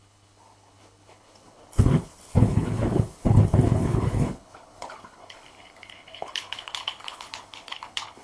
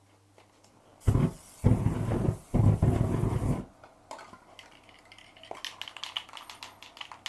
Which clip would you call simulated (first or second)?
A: first